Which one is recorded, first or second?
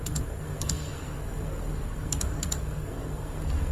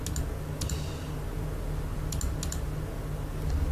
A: second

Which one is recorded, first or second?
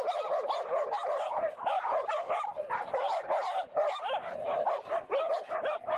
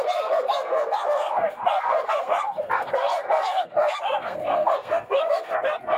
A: first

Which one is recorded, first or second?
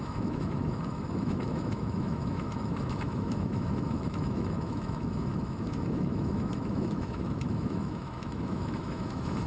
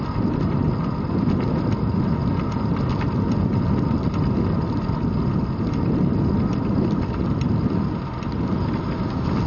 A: second